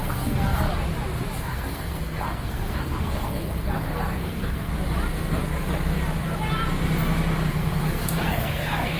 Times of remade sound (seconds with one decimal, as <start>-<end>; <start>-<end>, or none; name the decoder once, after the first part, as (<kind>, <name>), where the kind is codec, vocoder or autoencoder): 0.0-0.7 (codec, SNAC); 1.4-4.7; 7.5-9.0